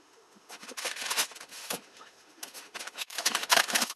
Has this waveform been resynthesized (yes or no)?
yes